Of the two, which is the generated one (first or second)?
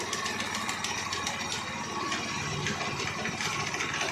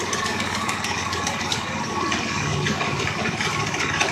second